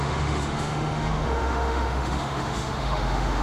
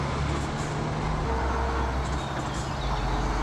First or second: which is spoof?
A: first